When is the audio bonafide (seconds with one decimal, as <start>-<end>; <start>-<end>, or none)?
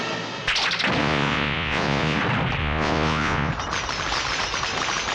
0.0-1.0; 2.2-2.6; 3.5-5.1